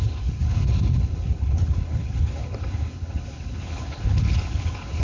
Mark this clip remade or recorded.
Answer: remade